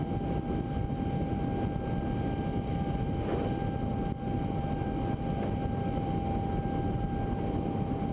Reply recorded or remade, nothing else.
recorded